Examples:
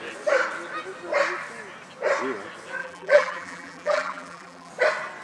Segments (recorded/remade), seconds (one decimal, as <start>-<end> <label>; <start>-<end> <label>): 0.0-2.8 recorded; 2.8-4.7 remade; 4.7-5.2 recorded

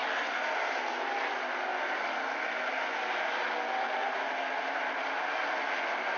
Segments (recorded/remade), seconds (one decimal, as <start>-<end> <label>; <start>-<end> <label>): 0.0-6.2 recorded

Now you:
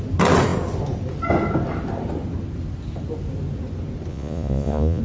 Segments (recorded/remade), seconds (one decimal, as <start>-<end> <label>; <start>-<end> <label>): 0.0-4.1 recorded; 4.1-5.0 remade

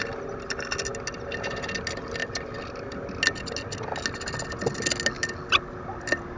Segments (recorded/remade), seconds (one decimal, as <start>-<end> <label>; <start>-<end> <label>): 0.0-6.4 recorded